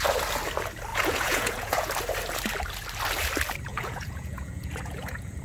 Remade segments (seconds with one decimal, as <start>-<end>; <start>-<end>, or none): 0.9-1.9; 3.7-5.4